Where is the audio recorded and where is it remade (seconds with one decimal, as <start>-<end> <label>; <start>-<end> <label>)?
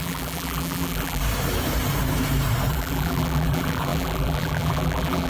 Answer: 0.0-1.2 remade; 1.2-2.7 recorded; 2.7-5.3 remade